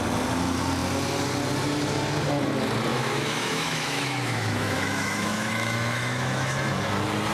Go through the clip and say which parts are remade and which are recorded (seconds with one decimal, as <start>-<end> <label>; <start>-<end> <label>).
0.0-2.9 recorded; 2.9-6.5 remade; 6.5-7.3 recorded